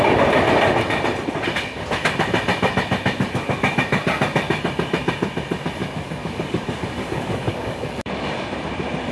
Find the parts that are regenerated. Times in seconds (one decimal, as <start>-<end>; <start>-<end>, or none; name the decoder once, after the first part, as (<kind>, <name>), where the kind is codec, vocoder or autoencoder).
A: 5.8-8.6 (codec, DAC)